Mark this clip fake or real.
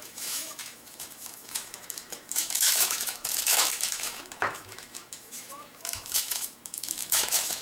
fake